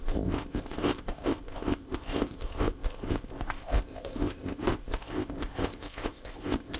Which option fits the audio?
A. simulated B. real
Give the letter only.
A